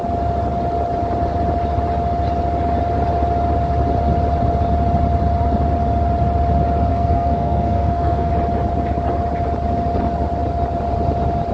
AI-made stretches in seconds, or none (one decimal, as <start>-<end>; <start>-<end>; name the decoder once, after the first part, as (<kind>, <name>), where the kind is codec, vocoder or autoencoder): 6.9-8.3 (codec, SNAC)